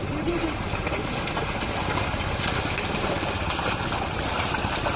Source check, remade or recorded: recorded